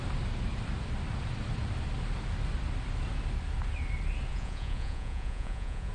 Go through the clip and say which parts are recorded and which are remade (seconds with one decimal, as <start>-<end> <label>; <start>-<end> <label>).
0.0-4.3 recorded; 4.3-5.9 remade